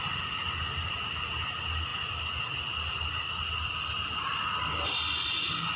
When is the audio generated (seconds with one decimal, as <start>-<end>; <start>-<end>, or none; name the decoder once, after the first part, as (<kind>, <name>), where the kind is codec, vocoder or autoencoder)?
none